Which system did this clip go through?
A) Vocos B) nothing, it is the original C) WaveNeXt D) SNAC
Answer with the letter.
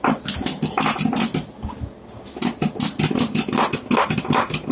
B